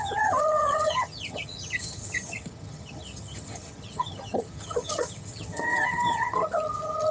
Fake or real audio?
fake